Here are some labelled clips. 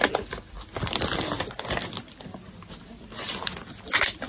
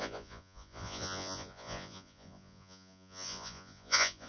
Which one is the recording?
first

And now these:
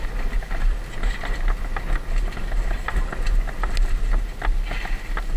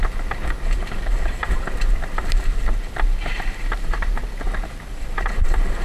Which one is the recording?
first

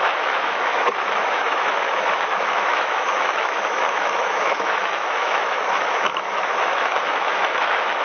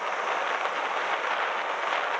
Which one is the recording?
second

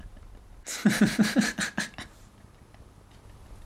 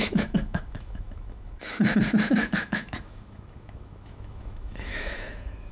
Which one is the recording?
first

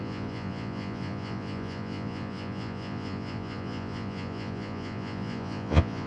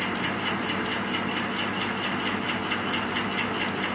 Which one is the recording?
second